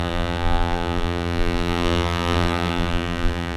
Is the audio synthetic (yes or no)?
yes